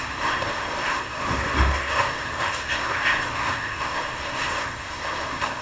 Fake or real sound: fake